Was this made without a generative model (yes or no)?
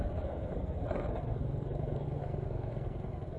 no